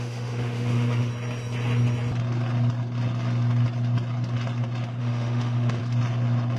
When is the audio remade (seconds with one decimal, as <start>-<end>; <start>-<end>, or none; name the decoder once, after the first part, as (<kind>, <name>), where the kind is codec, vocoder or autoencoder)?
0.0-1.1 (autoencoder, DAC-VAE); 5.0-5.8